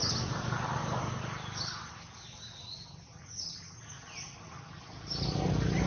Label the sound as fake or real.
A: real